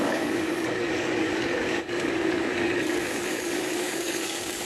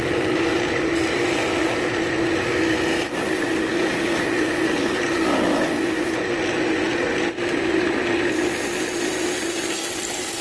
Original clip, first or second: second